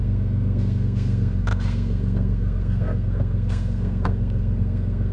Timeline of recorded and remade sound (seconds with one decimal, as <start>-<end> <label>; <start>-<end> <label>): 0.0-5.1 remade